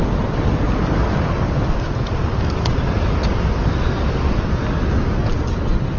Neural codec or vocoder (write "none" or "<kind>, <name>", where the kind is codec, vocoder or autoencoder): none